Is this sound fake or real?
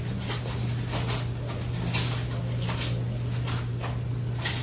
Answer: real